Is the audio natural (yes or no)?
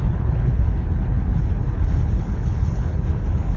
no